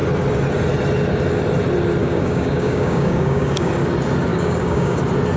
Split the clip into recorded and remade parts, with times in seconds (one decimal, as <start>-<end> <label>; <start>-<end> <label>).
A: 0.0-2.0 recorded; 2.0-3.7 remade; 3.7-4.3 recorded; 4.3-5.0 remade; 5.0-5.4 recorded